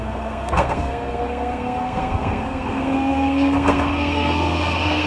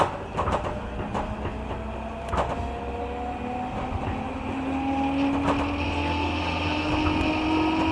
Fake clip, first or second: first